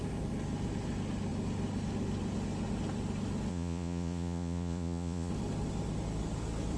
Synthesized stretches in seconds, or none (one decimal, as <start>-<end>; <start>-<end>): 3.5-5.3